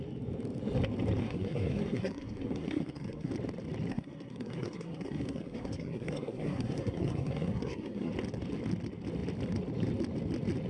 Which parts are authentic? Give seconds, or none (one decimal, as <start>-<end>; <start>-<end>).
0.0-1.2; 3.3-3.9; 8.1-10.7